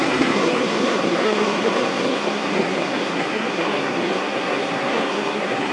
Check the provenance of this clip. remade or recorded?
remade